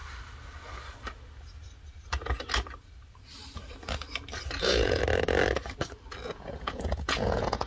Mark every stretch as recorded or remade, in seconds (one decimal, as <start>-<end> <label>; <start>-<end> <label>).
0.0-4.6 recorded; 4.6-5.0 remade; 5.0-6.2 recorded; 6.2-7.7 remade